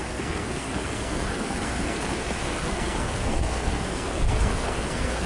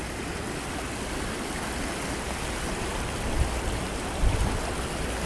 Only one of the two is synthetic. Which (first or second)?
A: first